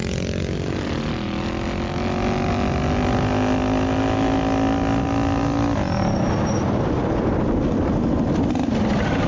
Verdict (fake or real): real